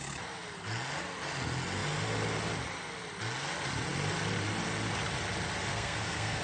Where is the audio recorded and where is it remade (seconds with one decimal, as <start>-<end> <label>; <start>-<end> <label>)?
0.0-5.7 recorded; 5.7-6.4 remade